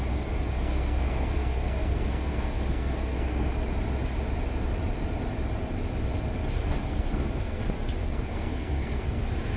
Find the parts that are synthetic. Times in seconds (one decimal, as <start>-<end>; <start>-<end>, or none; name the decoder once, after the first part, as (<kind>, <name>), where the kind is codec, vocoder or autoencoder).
0.5-3.5 (codec, SNAC); 6.6-7.6; 8.0-9.2